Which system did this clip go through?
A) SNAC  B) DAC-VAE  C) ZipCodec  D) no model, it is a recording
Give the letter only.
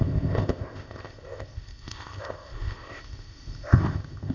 C